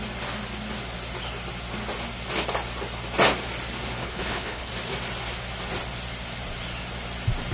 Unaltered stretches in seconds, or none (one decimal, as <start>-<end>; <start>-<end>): 0.0-4.0; 4.7-7.5